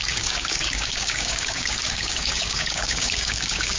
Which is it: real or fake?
fake